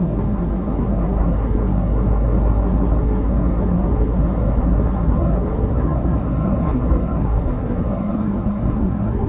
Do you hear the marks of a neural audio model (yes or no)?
yes